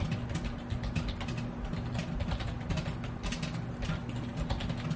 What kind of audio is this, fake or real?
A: real